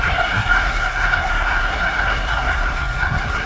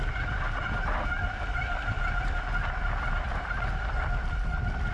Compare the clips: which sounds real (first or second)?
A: second